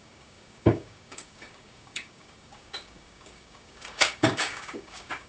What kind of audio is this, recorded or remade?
remade